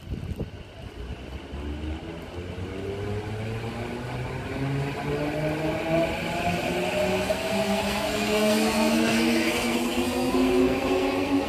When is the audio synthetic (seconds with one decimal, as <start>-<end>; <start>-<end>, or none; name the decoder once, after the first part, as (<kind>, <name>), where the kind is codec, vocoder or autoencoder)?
7.1-11.5 (codec, SNAC)